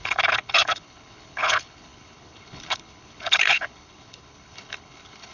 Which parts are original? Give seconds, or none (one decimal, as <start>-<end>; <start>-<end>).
none